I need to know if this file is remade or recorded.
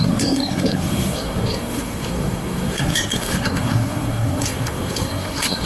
remade